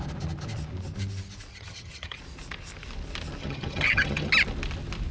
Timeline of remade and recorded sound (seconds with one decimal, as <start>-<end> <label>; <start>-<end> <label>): 0.0-1.5 recorded; 1.5-2.2 remade; 2.2-3.4 recorded; 3.4-4.3 remade; 4.3-5.1 recorded